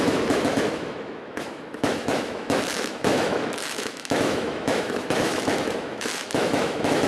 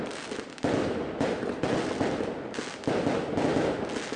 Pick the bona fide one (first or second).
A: second